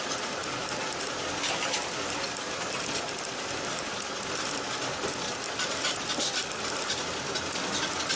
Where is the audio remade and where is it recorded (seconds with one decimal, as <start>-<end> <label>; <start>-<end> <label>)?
0.0-8.2 recorded